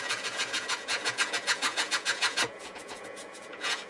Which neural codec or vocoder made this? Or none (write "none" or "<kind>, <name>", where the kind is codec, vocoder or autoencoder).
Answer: vocoder, Vocos